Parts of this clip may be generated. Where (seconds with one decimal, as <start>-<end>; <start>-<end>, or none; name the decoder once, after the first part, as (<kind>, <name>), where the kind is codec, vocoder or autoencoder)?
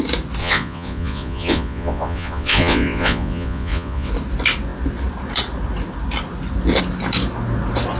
0.4-4.1 (vocoder, Vocos)